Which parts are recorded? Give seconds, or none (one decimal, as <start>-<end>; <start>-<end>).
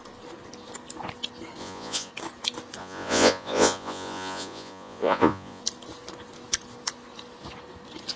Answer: 0.0-1.6; 2.1-2.8; 5.6-8.2